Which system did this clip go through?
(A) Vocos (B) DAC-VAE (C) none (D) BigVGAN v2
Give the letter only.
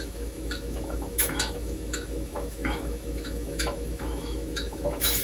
B